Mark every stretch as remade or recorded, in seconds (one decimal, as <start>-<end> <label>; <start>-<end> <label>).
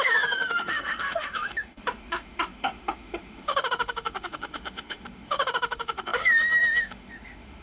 0.0-7.6 remade